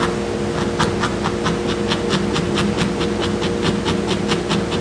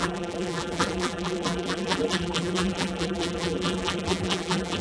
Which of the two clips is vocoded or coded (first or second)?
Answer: second